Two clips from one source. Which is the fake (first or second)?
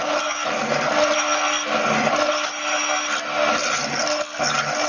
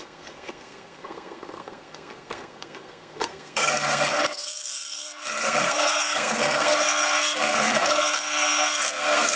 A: second